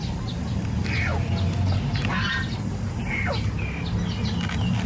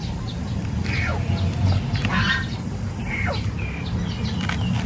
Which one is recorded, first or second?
first